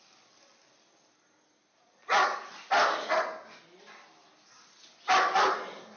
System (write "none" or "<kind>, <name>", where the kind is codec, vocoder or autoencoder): none